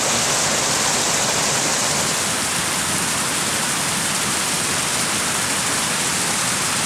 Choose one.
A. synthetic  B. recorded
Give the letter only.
B